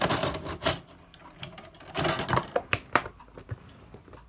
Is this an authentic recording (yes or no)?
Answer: no